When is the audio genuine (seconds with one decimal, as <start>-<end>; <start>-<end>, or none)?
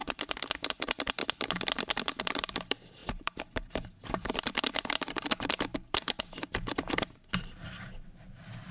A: 1.2-2.3